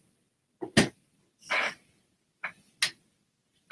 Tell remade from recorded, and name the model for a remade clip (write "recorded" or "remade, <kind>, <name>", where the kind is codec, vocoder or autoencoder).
recorded